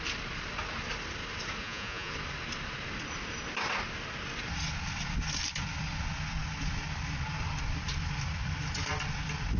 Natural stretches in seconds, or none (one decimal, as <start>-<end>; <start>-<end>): 0.0-1.6; 2.1-9.6